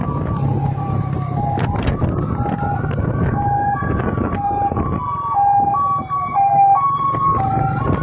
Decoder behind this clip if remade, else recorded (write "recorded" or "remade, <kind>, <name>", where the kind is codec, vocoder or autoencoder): recorded